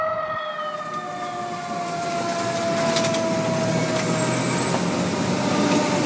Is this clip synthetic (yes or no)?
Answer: no